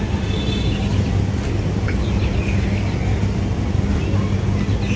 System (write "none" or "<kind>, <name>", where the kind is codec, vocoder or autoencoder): none